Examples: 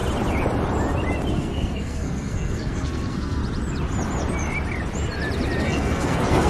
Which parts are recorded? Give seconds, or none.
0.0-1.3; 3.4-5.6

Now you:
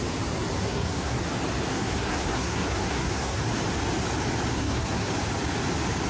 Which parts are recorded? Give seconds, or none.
0.0-0.6; 1.2-1.7; 3.4-4.5; 5.1-6.1

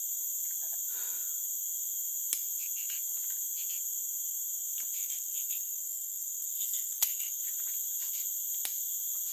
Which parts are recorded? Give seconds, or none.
0.0-5.0; 7.4-9.3

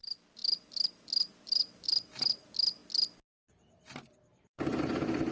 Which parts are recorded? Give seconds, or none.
0.0-5.3

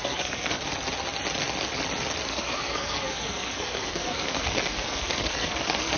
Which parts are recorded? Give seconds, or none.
0.6-2.3

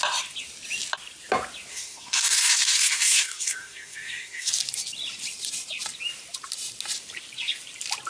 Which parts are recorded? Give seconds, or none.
0.0-1.7; 4.5-8.1

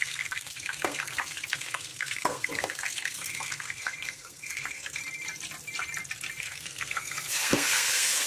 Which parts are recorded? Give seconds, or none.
5.0-6.4

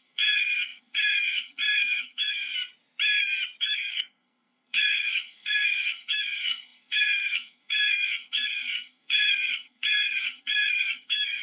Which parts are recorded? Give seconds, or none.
2.5-3.6